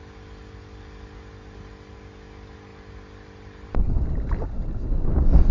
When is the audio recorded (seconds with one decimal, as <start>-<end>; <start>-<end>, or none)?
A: 0.0-2.7; 4.1-5.5